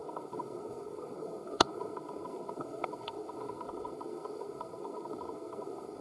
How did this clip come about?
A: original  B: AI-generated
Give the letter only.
B